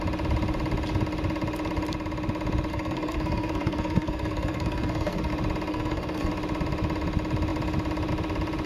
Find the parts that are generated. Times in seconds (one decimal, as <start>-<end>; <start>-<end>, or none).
2.7-5.3; 5.7-6.3